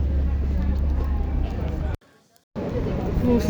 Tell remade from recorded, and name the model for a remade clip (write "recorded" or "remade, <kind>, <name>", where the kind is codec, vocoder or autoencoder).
recorded